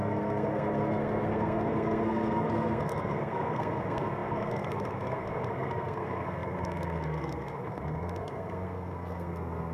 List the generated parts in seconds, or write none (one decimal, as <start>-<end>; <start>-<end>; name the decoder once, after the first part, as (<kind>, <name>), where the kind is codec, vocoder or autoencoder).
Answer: 0.0-9.7 (codec, SNAC)